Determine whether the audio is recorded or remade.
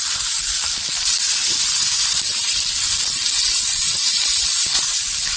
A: recorded